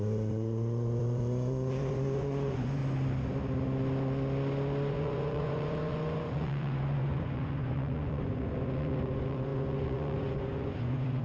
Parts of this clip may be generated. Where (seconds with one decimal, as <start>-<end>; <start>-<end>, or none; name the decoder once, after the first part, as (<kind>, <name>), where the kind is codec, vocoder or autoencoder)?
0.0-2.8 (vocoder, Vocos); 4.9-11.2